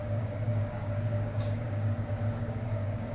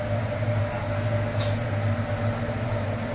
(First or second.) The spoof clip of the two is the first